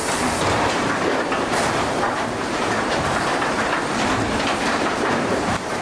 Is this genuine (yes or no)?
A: no